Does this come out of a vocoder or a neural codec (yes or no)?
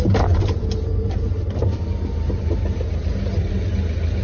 no